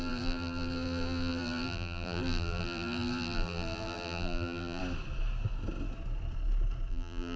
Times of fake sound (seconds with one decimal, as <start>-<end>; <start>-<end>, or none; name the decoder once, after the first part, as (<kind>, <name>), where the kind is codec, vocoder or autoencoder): 0.0-4.8 (vocoder, BigVGAN v2); 6.9-7.4